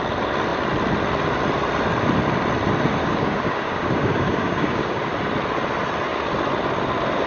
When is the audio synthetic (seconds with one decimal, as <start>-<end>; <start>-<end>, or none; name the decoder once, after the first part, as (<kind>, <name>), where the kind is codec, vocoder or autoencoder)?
3.0-5.0 (codec, DAC)